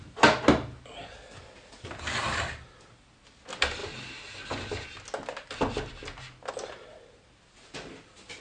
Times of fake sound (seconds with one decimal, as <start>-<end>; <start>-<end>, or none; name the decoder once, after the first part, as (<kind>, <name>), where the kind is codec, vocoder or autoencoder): none